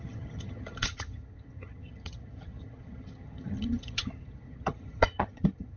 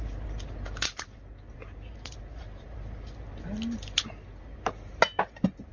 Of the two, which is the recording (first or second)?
second